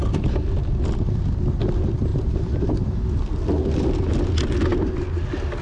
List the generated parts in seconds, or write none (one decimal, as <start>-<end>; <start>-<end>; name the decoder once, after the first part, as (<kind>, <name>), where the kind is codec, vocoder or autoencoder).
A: 2.1-3.0 (vocoder, BigVGAN v2)